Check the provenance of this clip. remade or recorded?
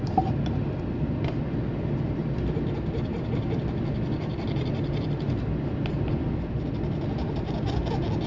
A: recorded